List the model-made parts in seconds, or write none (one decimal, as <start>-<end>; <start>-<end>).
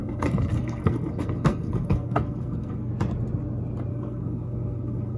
0.0-2.9; 3.9-5.2